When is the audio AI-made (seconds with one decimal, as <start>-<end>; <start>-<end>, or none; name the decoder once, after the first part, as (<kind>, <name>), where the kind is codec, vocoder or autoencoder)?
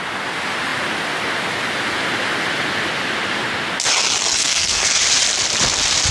4.4-5.0 (codec, SNAC)